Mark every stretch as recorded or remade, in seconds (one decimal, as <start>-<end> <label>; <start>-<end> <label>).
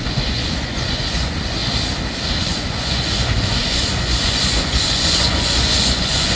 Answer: 0.0-1.6 remade; 1.6-2.4 recorded; 2.4-6.4 remade